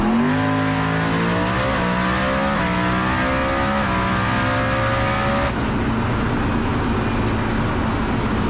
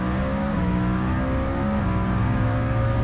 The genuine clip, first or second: first